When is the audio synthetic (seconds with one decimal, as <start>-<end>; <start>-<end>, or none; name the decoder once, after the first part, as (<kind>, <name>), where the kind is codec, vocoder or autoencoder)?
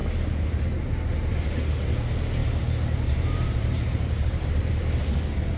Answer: 2.4-4.7 (vocoder, BigVGAN v2)